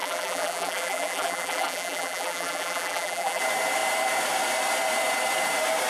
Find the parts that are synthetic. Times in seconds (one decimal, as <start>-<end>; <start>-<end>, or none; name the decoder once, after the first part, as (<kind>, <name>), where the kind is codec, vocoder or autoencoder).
0.0-3.4 (vocoder, BigVGAN v2)